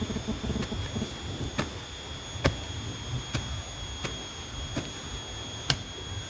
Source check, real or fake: real